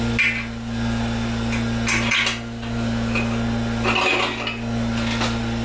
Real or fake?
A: real